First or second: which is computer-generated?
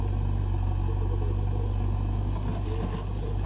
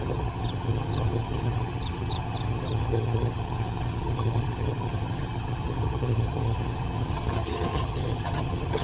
second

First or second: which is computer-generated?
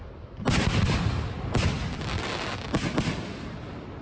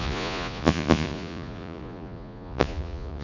second